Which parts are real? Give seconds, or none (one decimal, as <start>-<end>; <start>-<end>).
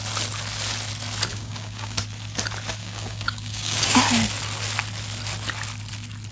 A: 0.0-1.3; 2.0-2.8; 4.0-6.3